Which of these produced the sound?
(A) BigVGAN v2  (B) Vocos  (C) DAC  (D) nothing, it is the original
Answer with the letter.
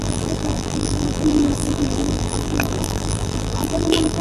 A